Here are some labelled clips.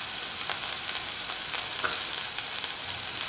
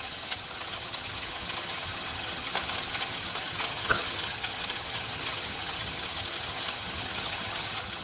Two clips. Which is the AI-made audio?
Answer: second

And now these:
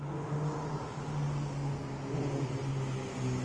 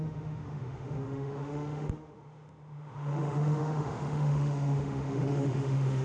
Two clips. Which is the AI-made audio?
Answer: second